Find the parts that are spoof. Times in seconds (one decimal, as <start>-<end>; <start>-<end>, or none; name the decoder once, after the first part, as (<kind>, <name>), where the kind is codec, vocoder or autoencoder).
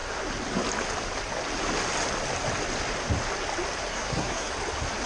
3.9-4.5 (codec, SNAC)